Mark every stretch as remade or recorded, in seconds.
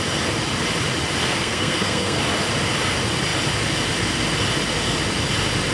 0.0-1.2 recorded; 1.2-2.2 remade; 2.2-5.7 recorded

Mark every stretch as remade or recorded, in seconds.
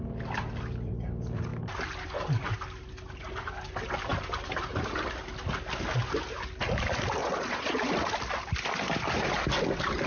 0.0-7.2 recorded; 7.2-7.9 remade; 7.9-10.1 recorded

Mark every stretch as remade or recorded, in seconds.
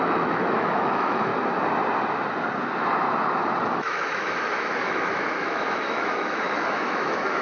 0.0-1.3 remade; 1.3-3.6 recorded; 3.6-7.4 remade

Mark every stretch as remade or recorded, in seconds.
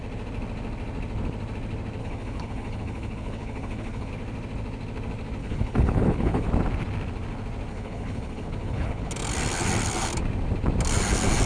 0.0-2.0 recorded; 2.0-4.1 remade; 4.1-5.4 recorded; 5.4-6.5 remade; 6.5-7.7 recorded; 7.7-9.1 remade; 9.1-11.5 recorded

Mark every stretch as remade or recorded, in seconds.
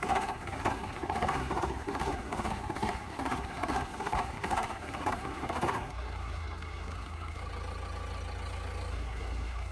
0.0-7.4 remade; 7.4-8.9 recorded; 8.9-9.7 remade